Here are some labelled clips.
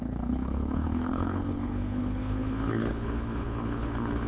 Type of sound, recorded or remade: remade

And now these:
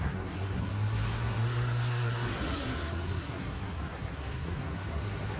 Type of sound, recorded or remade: remade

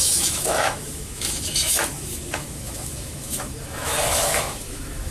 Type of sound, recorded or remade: remade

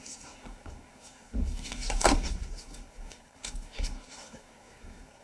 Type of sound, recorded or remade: remade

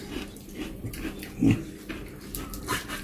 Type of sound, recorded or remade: remade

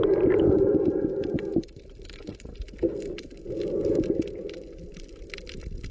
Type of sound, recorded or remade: recorded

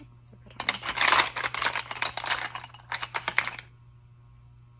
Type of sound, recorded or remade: recorded